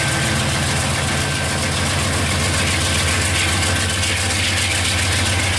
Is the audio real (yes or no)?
yes